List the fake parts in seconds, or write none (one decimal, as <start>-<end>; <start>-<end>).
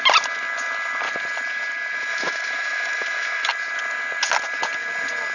2.1-3.5